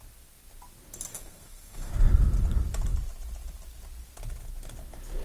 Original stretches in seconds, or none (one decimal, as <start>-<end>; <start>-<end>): 0.0-1.1; 1.9-5.2